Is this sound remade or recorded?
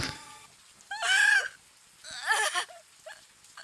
recorded